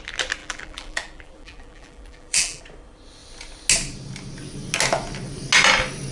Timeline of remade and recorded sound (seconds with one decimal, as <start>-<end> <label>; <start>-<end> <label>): 0.0-0.4 recorded; 0.4-2.6 remade; 2.6-6.1 recorded